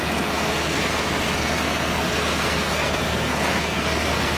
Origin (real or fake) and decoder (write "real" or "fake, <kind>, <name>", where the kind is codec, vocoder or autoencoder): fake, codec, SNAC